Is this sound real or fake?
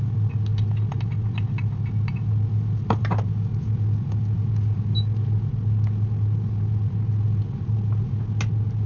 real